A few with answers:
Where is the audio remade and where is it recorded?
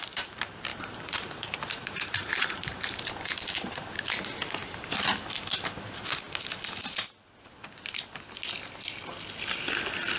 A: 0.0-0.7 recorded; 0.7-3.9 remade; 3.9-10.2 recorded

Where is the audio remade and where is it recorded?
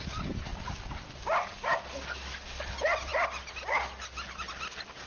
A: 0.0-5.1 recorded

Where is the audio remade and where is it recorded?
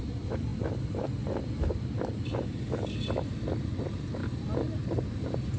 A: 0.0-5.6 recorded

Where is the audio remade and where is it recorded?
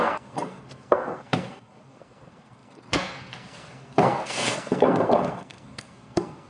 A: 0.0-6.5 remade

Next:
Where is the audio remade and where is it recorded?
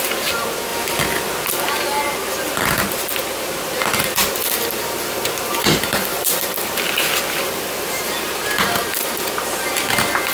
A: 0.0-4.2 recorded; 4.2-8.3 remade; 8.3-10.3 recorded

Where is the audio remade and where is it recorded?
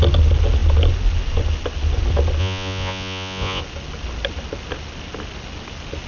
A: 0.0-2.4 recorded; 2.4-3.6 remade; 3.6-6.1 recorded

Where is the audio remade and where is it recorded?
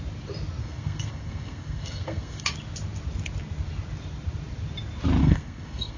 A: 0.0-0.6 recorded; 0.6-2.5 remade; 2.5-5.2 recorded; 5.2-6.0 remade